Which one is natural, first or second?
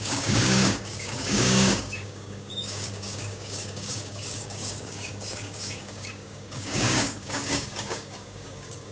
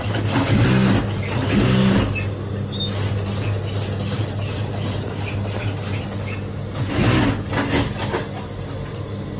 second